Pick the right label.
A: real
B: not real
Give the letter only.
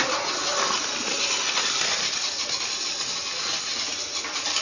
A